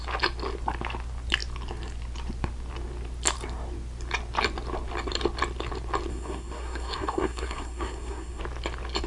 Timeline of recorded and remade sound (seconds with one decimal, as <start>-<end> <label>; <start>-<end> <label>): 0.0-6.1 recorded; 6.1-8.4 remade; 8.4-9.1 recorded